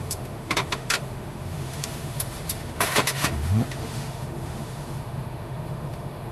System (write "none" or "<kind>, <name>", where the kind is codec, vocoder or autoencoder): autoencoder, DAC-VAE